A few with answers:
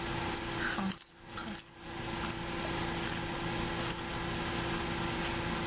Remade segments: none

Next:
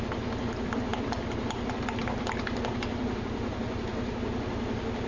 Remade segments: none